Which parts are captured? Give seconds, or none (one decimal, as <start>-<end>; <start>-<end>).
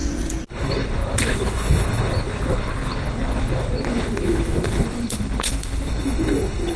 0.0-0.5